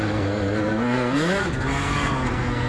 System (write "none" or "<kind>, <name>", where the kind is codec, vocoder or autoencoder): codec, SNAC